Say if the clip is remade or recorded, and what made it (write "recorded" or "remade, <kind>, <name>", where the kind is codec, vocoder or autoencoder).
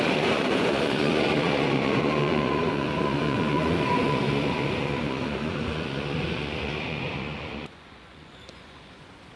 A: remade, vocoder, Vocos